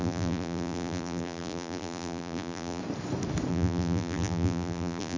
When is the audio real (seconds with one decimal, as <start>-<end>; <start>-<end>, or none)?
2.8-3.5